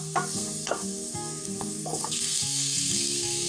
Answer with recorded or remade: remade